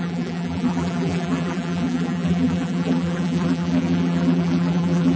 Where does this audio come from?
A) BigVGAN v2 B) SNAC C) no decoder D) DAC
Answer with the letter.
A